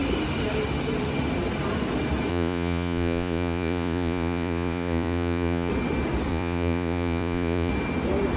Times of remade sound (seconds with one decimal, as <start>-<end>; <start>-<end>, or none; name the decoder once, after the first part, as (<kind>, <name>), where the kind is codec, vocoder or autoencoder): 2.3-5.7 (vocoder, Vocos); 6.3-7.7